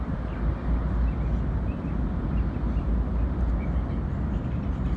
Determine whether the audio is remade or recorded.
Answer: recorded